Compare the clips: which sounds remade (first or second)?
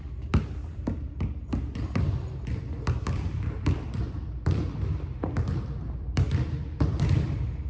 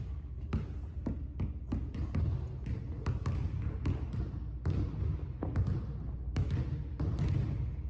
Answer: first